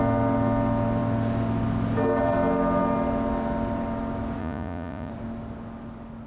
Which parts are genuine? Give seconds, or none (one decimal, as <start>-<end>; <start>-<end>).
0.0-4.4; 5.1-6.3